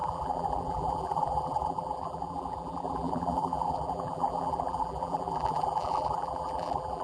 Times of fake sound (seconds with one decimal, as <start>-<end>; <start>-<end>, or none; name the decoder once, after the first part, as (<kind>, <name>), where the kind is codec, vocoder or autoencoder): 0.0-7.0 (vocoder, BigVGAN v2)

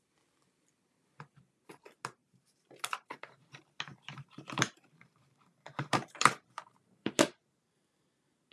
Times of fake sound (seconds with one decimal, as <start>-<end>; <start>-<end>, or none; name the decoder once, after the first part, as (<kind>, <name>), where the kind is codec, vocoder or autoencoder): 2.2-3.5 (vocoder, BigVGAN v2); 3.9-7.1